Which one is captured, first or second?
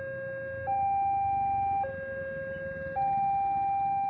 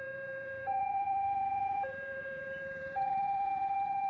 first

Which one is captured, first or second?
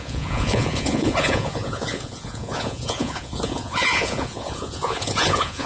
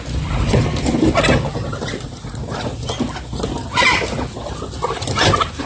second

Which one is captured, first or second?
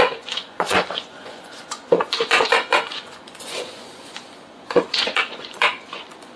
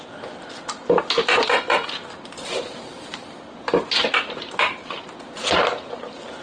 second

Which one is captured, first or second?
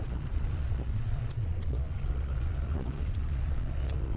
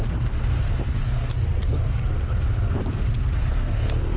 second